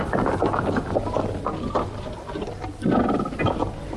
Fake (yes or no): no